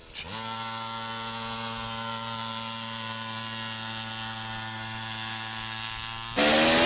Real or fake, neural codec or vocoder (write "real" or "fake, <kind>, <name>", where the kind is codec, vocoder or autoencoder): real